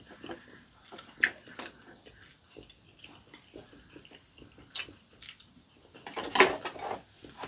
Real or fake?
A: real